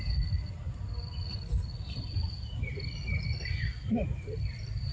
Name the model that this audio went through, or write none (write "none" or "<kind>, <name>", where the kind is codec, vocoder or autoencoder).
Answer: none